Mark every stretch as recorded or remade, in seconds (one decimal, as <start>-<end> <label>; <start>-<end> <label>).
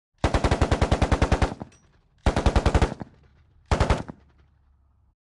0.0-2.2 recorded; 2.2-2.8 remade; 2.8-3.3 recorded; 3.3-4.1 remade; 4.1-5.4 recorded